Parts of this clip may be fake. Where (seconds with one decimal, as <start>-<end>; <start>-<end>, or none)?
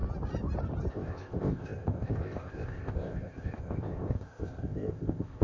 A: 0.9-5.4